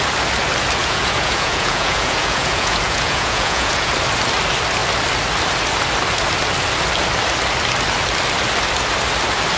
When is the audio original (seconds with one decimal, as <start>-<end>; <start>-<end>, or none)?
0.0-0.8; 3.9-9.6